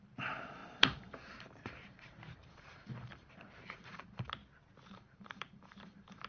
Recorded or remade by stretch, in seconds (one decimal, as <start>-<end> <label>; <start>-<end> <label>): 0.0-4.4 remade; 4.4-4.9 recorded; 4.9-6.3 remade